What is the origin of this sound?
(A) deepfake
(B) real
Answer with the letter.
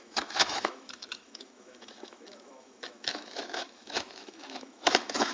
A